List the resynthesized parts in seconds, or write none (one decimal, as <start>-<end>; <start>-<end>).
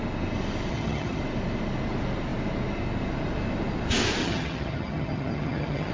0.7-1.2; 4.2-5.9